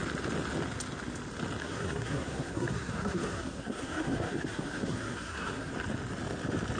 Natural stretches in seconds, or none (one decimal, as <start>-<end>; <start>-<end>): 0.0-1.6; 5.7-6.8